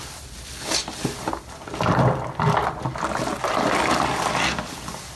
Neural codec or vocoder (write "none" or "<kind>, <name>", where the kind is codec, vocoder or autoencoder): none